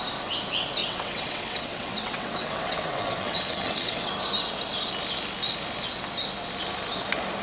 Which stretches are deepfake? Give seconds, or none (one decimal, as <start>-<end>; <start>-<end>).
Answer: 0.8-4.1